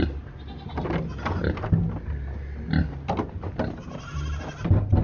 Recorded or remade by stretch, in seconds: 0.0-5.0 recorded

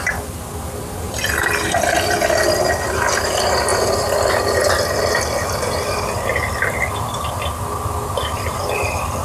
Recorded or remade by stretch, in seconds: 0.0-9.2 recorded

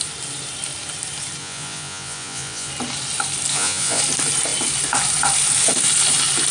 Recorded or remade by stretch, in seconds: 0.0-1.4 recorded; 1.4-2.7 remade; 2.7-3.5 recorded; 3.5-4.0 remade; 4.0-6.5 recorded

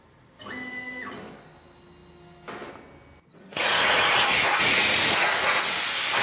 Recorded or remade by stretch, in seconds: 0.0-3.3 recorded; 3.3-5.6 remade; 5.6-6.2 recorded

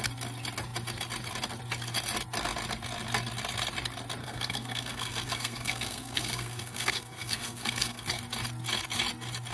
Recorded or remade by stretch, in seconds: 0.0-4.2 recorded; 4.2-8.2 remade; 8.2-9.5 recorded

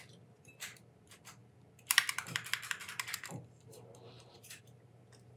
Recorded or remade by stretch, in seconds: 0.0-5.4 recorded

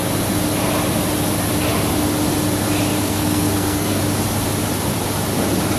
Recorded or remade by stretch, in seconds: 0.0-2.9 recorded; 2.9-4.0 remade; 4.0-5.8 recorded